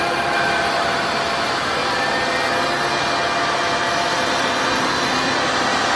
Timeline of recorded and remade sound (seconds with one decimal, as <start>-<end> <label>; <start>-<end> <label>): 0.0-1.8 remade; 1.8-4.0 recorded; 4.0-6.0 remade